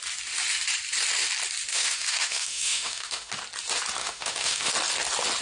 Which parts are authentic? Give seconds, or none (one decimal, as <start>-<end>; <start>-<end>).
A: 0.0-1.7; 3.3-4.0; 4.7-5.4